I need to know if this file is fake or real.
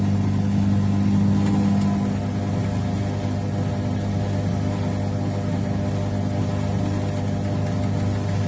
real